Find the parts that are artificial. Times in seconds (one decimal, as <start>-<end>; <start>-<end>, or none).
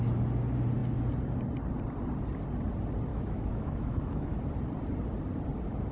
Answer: 3.1-4.4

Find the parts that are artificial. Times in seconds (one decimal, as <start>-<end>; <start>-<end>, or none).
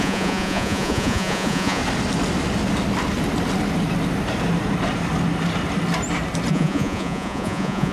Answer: 0.0-1.8; 6.5-7.9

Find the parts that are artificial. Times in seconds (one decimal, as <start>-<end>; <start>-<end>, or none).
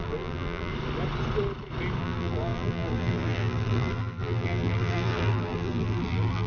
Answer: 0.0-0.7; 2.0-6.5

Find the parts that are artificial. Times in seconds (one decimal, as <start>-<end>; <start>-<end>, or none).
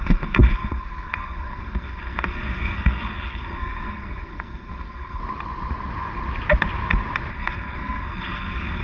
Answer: 0.0-5.2; 7.3-8.8